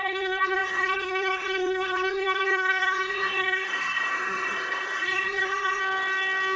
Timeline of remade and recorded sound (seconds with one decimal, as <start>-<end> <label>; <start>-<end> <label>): 0.0-5.8 remade; 5.8-6.6 recorded